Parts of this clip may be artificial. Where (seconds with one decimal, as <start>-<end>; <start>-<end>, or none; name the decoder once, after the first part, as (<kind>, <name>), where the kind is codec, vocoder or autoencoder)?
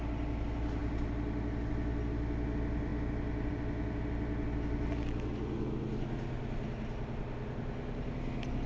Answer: none